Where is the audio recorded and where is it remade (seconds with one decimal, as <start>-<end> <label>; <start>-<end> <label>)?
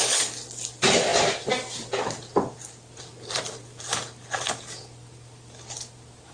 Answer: 0.0-6.3 recorded